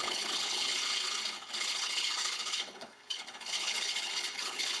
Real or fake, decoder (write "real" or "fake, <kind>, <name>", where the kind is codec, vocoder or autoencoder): fake, codec, HILCodec